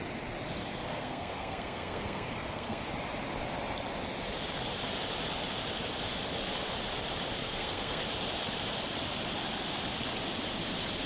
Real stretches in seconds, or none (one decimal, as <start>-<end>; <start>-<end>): 0.0-0.7; 2.8-7.4; 8.0-11.1